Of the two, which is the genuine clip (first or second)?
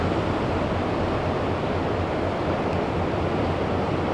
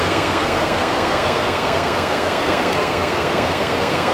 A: first